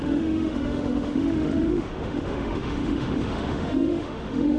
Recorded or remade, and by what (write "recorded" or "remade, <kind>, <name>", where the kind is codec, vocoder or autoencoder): remade, autoencoder, DAC-VAE